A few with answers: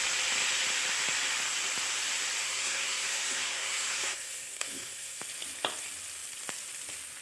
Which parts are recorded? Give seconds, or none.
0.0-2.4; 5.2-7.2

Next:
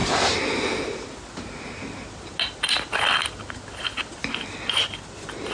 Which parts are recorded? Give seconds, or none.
0.0-5.5

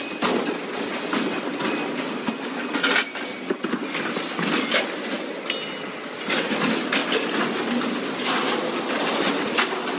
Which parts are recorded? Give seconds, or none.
0.0-10.0

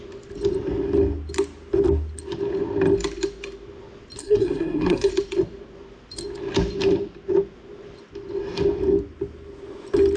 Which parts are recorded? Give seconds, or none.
0.0-4.2; 5.1-10.2

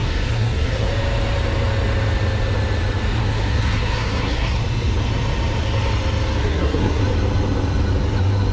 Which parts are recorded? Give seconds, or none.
0.9-3.2; 4.6-6.4; 7.0-8.5

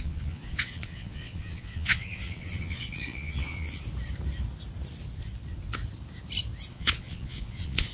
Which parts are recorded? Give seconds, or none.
3.8-6.7